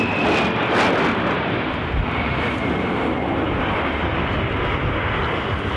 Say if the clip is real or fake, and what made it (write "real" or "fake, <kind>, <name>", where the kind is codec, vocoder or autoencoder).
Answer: real